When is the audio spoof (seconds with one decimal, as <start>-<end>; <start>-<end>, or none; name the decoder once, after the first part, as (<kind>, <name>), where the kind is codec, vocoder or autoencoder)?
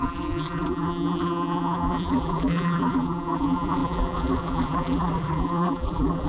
0.0-6.3 (vocoder, BigVGAN v2)